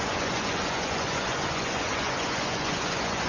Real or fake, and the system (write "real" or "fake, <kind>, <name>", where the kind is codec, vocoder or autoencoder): fake, vocoder, Vocos